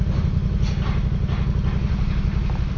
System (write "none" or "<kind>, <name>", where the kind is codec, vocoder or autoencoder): none